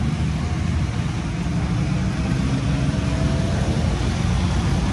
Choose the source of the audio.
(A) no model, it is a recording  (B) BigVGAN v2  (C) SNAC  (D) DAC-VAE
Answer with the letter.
A